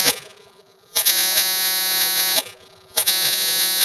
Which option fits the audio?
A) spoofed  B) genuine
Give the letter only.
A